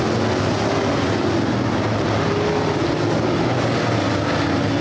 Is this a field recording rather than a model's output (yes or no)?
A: yes